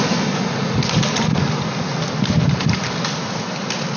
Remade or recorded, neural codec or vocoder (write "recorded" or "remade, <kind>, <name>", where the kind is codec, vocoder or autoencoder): recorded